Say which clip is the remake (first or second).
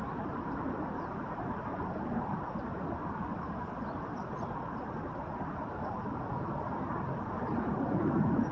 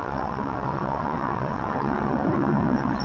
second